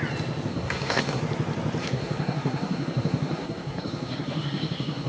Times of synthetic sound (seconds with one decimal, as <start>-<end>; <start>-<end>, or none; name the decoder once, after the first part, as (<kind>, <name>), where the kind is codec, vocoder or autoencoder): 0.5-1.2 (codec, SNAC); 1.8-5.1